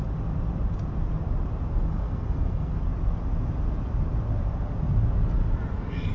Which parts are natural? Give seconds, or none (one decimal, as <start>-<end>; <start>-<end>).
0.0-1.9; 2.8-6.1